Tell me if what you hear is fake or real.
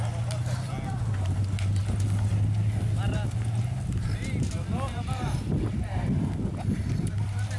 real